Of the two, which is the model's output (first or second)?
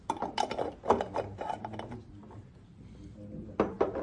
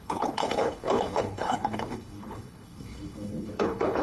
second